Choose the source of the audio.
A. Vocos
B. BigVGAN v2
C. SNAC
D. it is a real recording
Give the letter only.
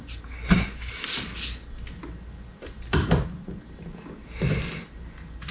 D